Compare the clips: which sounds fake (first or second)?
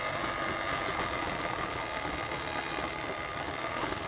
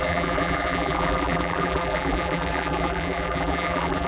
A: second